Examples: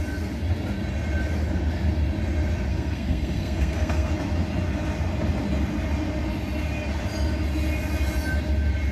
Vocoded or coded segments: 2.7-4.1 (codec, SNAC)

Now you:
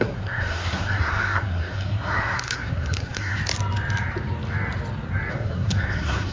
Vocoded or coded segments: 0.0-3.4 (codec, SNAC); 5.3-6.3

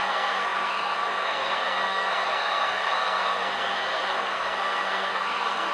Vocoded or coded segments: 0.0-5.7 (codec, SNAC)

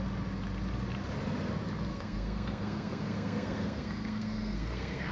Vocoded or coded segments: 1.9-5.1 (codec, SNAC)

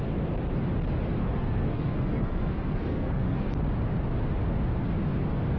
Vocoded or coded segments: 1.2-3.5 (codec, SNAC)

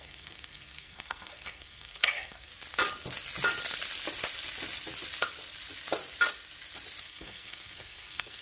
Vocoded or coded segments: 0.0-2.5 (codec, SNAC); 7.0-8.4